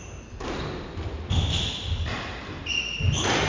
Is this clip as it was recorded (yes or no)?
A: yes